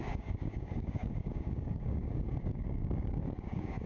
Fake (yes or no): yes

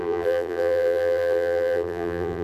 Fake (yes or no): yes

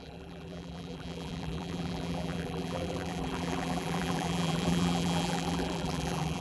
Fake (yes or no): yes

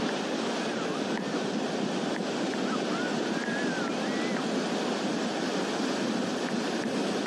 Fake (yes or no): no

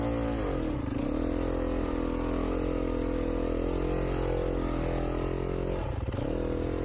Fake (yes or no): no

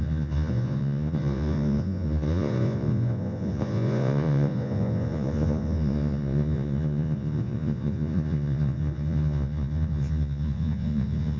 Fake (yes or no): yes